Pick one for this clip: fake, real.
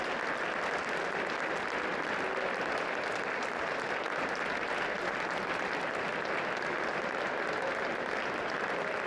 real